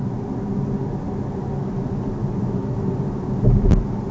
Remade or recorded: recorded